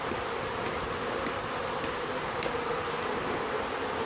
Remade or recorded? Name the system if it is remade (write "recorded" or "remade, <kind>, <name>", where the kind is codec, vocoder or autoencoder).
recorded